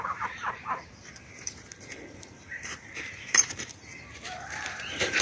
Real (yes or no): no